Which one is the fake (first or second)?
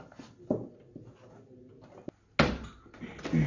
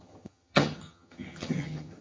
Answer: second